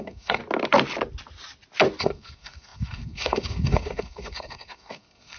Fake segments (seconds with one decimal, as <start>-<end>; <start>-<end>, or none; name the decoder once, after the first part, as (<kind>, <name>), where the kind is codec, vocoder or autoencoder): 0.0-0.4 (codec, SNAC); 2.0-5.4